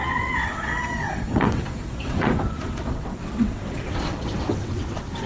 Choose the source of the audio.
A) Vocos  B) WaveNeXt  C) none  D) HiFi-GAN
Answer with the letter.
B